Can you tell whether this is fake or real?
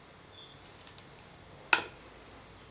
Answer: real